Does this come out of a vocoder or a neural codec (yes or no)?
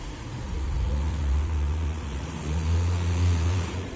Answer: yes